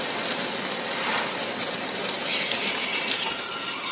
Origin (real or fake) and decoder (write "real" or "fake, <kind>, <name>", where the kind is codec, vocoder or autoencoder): real